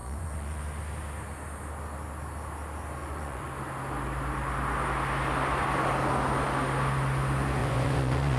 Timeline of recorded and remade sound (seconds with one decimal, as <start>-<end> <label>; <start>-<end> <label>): 0.0-0.6 remade; 0.6-3.0 recorded; 3.0-3.5 remade; 3.5-7.6 recorded; 7.6-8.4 remade